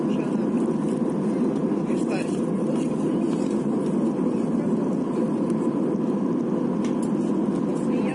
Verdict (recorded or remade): recorded